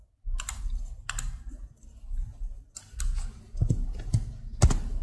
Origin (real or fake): real